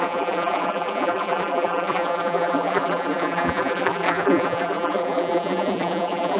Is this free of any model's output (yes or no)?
no